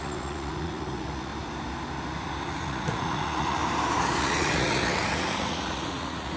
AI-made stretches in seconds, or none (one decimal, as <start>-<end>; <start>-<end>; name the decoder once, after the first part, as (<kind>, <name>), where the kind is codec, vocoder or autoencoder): 0.0-1.3 (vocoder, Vocos); 2.4-3.6; 4.2-6.4